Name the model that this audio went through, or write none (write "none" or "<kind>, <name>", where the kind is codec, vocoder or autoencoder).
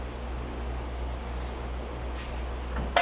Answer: none